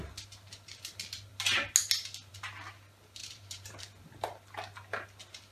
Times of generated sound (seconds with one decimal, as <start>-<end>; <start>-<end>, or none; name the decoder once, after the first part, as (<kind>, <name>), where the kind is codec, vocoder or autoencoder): 3.2-3.8 (vocoder, BigVGAN v2)